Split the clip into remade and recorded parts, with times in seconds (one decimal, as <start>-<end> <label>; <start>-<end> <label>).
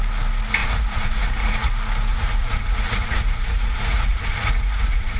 0.0-0.6 recorded; 0.6-1.7 remade; 1.7-2.1 recorded; 2.1-5.2 remade